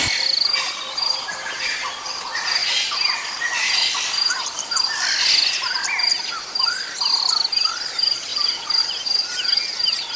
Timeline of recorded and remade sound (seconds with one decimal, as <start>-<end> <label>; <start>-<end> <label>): 0.0-10.2 recorded